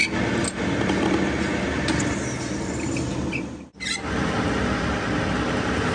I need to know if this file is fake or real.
real